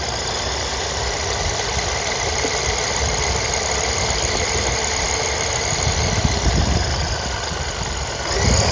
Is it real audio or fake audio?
real